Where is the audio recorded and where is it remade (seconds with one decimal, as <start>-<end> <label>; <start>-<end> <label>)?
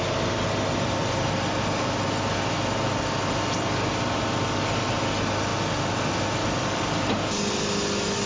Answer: 0.0-8.3 recorded